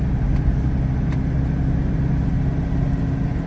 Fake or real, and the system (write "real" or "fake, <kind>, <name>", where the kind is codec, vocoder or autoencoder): real